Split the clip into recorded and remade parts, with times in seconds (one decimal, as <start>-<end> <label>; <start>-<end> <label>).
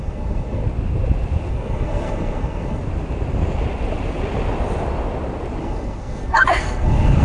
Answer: 0.0-0.6 remade; 0.6-1.5 recorded; 1.5-2.8 remade; 2.8-5.6 recorded; 5.6-7.2 remade